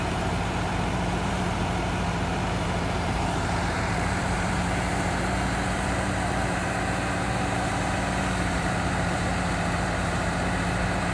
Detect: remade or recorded remade